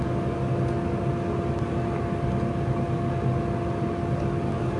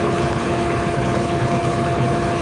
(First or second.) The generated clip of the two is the second